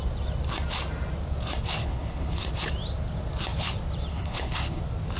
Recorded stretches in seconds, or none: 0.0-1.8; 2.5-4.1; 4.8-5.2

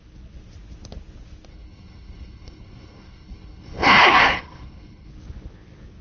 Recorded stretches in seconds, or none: 0.0-1.5; 5.1-6.0

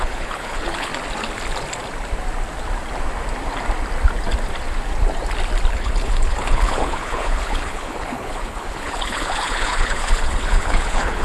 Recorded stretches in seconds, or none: 0.9-5.7

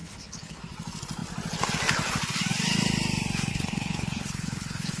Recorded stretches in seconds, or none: 0.6-3.5